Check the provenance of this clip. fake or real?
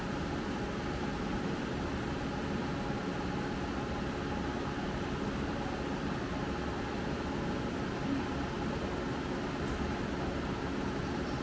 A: real